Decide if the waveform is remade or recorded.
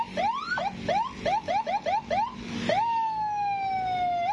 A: recorded